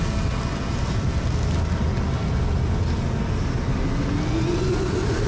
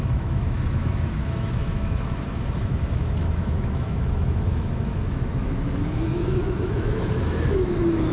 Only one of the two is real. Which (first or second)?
first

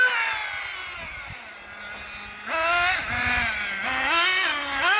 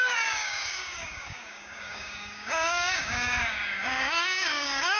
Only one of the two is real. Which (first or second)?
first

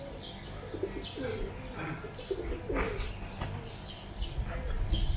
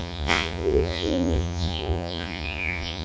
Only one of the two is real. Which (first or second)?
first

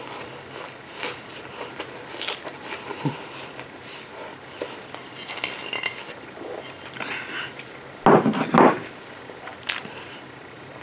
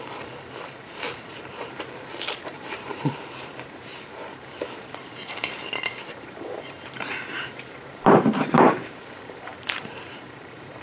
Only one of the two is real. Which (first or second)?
first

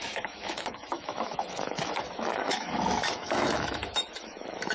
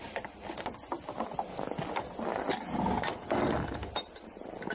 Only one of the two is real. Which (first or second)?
second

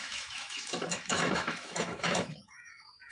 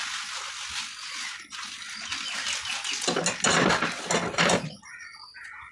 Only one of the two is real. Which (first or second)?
second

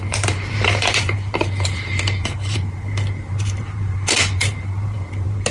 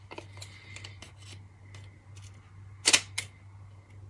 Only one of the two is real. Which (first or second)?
second